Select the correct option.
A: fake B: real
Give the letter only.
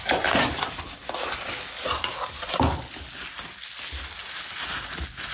B